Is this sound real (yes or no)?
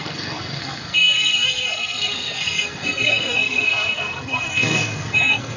no